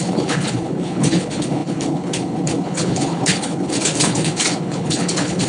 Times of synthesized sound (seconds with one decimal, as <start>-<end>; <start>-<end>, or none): 0.0-5.5